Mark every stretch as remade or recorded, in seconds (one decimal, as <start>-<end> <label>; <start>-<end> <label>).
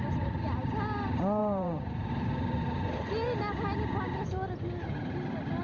0.0-1.4 recorded; 1.4-2.1 remade; 2.1-5.6 recorded